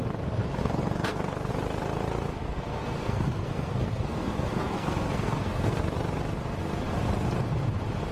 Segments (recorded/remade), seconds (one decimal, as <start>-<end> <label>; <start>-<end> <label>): 0.0-0.6 recorded; 0.6-1.5 remade; 1.5-2.4 recorded; 2.4-5.8 remade; 5.8-8.1 recorded